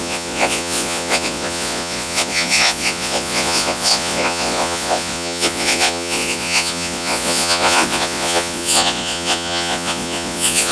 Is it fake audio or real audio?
fake